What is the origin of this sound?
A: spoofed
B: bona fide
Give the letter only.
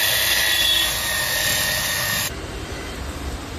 B